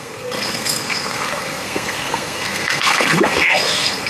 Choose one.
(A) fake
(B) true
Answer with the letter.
A